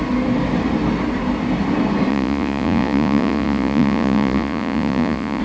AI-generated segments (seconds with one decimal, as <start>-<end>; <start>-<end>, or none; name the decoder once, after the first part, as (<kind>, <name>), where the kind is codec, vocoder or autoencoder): 2.1-5.4 (vocoder, Vocos)